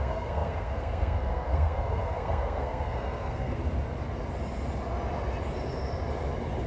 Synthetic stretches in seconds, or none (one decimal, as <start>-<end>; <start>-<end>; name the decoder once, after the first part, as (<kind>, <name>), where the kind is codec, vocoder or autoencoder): 0.0-3.6 (codec, SNAC)